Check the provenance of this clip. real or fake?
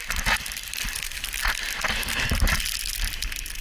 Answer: real